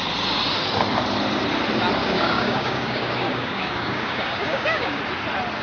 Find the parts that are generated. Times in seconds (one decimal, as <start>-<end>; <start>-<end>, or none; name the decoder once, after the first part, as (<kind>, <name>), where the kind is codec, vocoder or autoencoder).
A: 2.0-5.0 (codec, DAC)